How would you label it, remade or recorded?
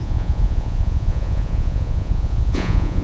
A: remade